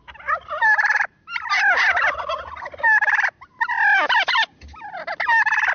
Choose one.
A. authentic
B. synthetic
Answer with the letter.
A